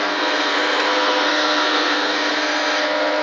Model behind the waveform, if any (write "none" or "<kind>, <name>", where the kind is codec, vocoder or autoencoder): codec, SNAC